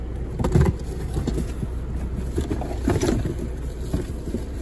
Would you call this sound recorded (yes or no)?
yes